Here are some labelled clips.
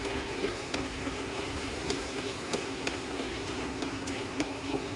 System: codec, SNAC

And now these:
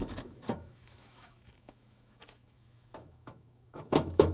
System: autoencoder, DAC-VAE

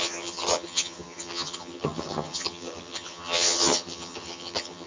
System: vocoder, HiFi-GAN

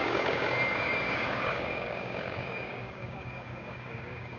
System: codec, DAC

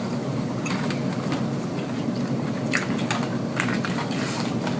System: none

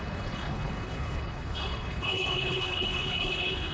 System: codec, HILCodec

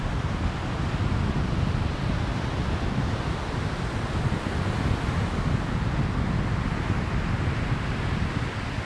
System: none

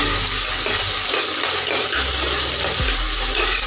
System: none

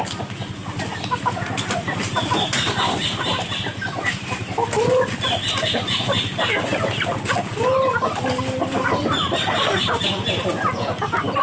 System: none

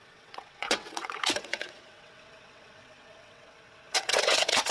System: vocoder, WaveNeXt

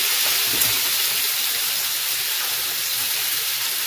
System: none